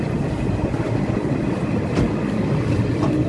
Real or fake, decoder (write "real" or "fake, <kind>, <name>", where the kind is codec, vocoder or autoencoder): real